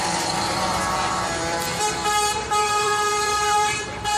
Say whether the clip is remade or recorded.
remade